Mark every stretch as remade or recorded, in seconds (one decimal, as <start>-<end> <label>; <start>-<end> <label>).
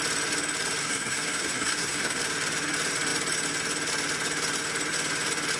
0.0-0.8 recorded; 0.8-2.2 remade; 2.2-5.6 recorded